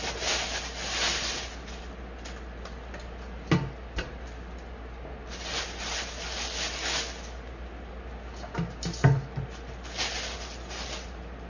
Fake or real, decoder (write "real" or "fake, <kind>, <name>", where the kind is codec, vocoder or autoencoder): real